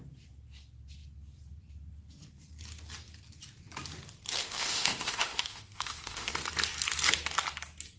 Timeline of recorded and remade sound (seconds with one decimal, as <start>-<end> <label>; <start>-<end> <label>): 0.0-4.4 recorded; 4.4-6.3 remade; 6.3-8.0 recorded